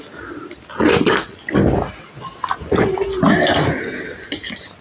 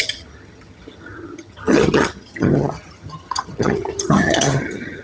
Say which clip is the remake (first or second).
second